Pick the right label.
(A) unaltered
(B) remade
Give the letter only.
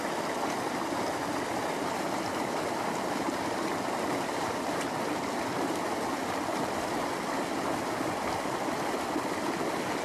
A